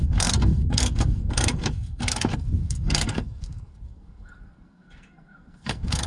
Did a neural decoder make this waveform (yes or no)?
yes